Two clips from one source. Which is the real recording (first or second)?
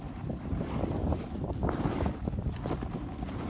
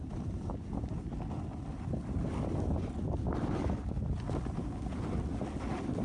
second